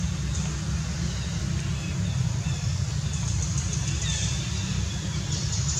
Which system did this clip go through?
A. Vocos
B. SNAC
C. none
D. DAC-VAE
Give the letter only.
C